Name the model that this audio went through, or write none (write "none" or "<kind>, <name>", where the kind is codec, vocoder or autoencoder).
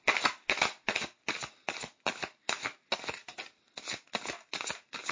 none